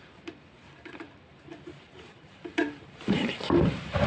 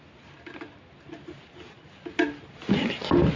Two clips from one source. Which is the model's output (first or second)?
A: first